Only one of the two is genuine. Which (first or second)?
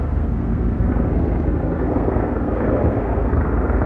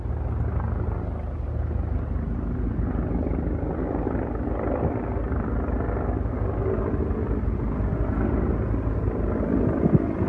second